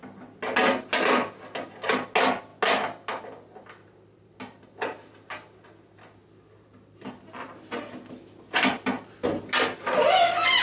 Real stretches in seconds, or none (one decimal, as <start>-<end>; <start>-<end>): 0.0-10.6